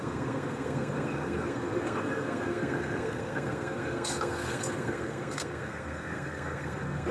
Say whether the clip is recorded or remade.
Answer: remade